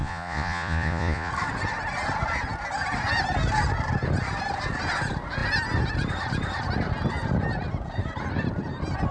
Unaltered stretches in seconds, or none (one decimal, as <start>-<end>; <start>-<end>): 1.3-9.1